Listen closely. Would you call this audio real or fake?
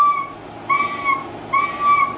real